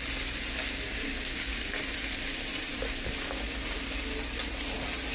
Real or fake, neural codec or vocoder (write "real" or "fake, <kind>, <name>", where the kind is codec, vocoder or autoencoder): real